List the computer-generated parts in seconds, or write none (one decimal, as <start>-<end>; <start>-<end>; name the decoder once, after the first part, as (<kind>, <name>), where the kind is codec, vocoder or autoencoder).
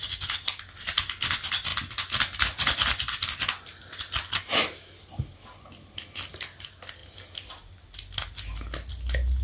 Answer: none